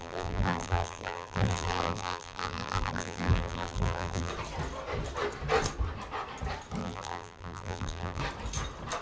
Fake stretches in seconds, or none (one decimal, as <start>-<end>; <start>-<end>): 0.0-4.3; 6.8-8.2